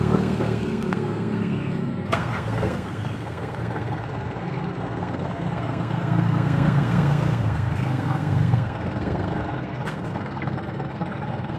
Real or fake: fake